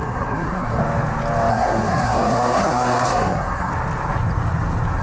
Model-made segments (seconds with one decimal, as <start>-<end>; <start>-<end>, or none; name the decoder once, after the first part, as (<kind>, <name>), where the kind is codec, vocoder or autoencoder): 0.0-0.8 (codec, SNAC); 1.5-3.7